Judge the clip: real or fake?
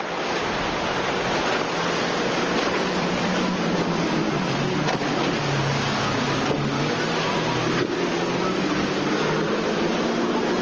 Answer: real